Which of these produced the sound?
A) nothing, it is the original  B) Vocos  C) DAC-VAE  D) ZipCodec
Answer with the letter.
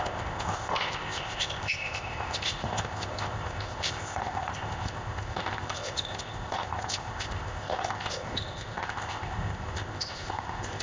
D